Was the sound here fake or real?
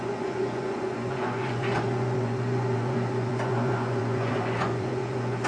fake